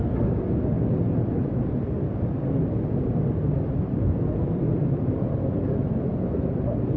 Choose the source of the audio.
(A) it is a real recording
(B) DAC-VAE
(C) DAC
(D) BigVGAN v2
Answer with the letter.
A